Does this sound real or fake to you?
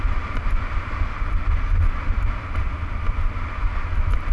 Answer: real